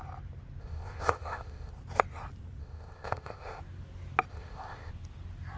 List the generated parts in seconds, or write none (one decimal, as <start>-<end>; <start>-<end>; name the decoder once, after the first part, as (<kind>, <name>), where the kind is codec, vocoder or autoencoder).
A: 0.6-1.7 (codec, ZipCodec); 2.6-3.6; 4.3-4.9